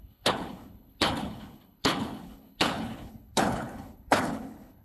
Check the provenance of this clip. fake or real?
fake